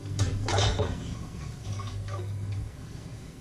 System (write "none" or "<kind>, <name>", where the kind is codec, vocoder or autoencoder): codec, SNAC